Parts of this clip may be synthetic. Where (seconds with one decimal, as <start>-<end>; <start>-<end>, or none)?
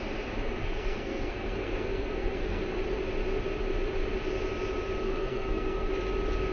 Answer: 0.6-2.6; 5.0-5.9